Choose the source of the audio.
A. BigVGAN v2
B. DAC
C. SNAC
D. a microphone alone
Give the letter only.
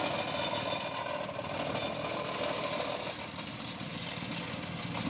D